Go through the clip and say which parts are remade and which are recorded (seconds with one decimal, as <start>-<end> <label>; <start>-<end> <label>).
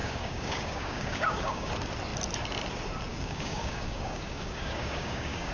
0.0-1.7 remade; 1.7-3.1 recorded; 3.1-5.5 remade